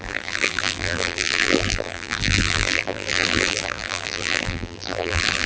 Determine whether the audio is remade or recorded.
remade